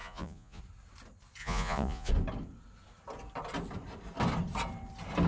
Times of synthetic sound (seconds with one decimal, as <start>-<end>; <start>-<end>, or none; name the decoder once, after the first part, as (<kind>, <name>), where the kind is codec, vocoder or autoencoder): 0.0-0.6 (vocoder, Vocos); 1.4-2.1